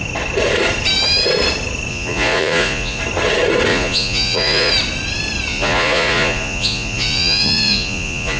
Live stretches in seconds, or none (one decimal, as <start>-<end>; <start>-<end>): 0.0-1.9; 3.0-3.7; 4.7-5.5